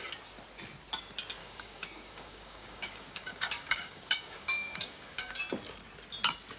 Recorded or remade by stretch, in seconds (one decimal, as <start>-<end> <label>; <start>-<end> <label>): 0.0-1.4 recorded; 1.4-5.4 remade; 5.4-6.6 recorded